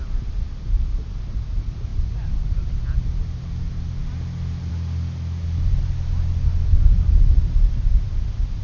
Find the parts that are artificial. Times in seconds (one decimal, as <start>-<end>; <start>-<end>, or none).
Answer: none